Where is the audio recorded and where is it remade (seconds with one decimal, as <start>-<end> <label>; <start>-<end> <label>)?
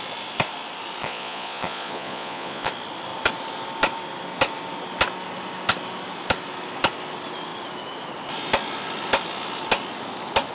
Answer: 0.0-1.0 recorded; 1.0-2.7 remade; 2.7-10.5 recorded